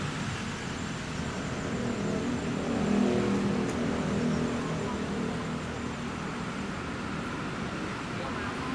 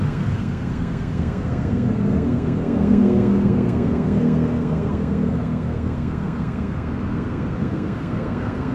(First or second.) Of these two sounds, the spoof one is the second